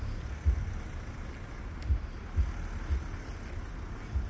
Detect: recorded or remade recorded